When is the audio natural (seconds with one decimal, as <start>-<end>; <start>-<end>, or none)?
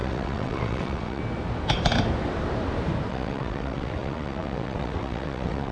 1.2-3.1